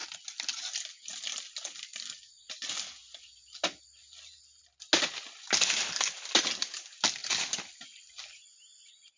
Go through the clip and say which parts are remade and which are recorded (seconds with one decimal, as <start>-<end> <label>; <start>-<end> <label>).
0.0-9.2 recorded